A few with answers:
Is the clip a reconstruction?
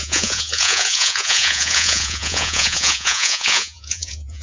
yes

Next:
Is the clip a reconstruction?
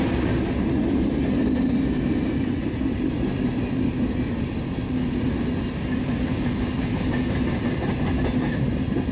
no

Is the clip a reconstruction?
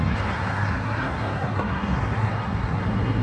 yes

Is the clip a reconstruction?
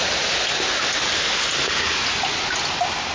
no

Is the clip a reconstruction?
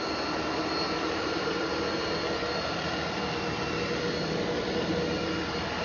no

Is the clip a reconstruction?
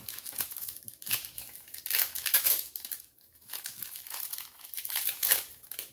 yes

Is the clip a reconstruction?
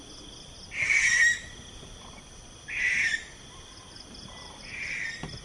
no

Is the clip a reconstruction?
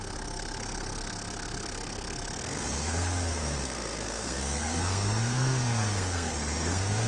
yes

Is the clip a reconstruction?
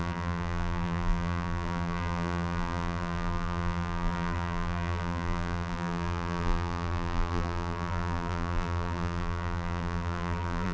yes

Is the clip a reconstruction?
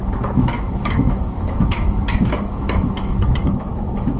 yes